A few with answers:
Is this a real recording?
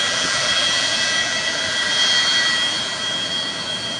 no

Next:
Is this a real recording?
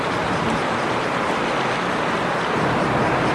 yes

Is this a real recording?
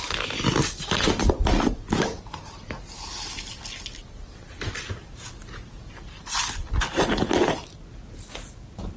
yes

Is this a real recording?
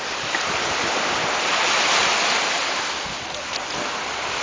yes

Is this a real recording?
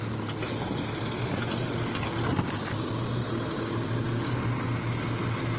yes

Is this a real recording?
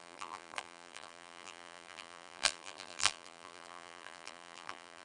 no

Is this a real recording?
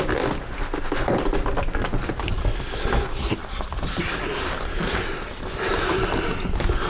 yes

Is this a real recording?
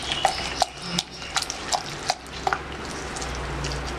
yes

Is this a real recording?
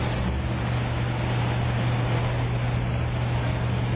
yes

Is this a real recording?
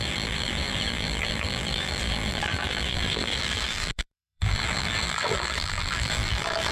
no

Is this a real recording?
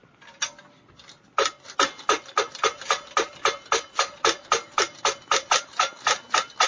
yes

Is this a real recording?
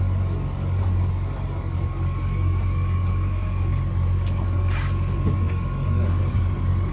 no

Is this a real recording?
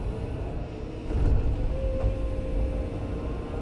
yes